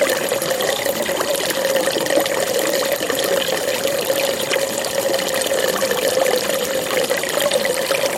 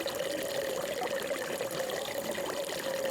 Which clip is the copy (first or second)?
first